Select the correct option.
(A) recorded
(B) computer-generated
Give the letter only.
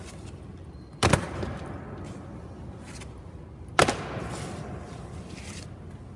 A